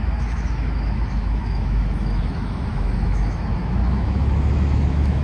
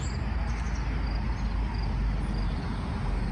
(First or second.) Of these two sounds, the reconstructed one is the first